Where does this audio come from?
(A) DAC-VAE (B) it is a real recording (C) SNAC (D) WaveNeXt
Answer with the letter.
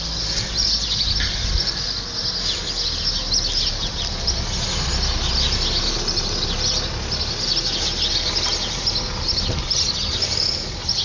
B